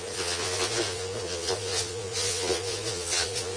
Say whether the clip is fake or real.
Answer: fake